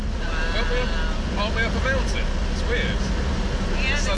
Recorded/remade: recorded